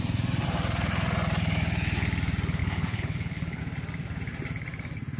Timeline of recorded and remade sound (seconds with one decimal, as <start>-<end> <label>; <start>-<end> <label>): 0.0-2.6 recorded; 2.6-3.6 remade; 3.6-5.2 recorded

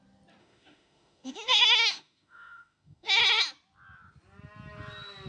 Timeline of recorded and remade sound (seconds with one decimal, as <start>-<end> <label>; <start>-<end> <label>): 0.0-0.4 recorded; 0.4-3.2 remade; 3.2-5.3 recorded

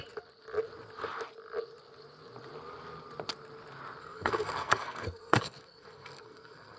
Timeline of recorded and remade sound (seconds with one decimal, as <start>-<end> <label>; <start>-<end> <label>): 0.0-4.0 recorded; 4.0-6.8 remade

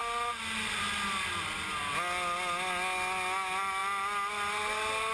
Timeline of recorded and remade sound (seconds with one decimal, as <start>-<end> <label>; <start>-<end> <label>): 0.0-5.1 recorded

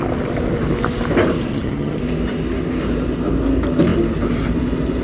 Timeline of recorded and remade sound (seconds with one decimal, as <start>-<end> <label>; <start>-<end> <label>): 0.0-1.5 recorded; 1.5-2.0 remade; 2.0-5.0 recorded

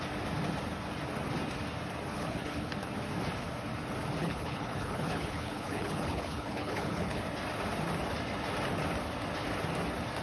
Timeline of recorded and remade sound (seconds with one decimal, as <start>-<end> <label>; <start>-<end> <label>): 0.0-2.1 recorded; 2.1-2.7 remade; 2.7-4.2 recorded; 4.2-7.2 remade; 7.2-10.2 recorded